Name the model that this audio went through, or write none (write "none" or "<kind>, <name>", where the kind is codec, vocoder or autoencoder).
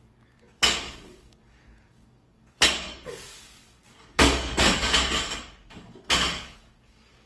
codec, DAC